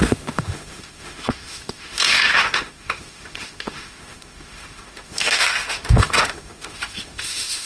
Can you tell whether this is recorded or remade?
remade